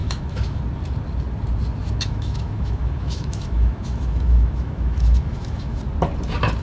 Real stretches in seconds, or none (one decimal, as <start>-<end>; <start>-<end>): 0.6-1.8; 5.8-6.6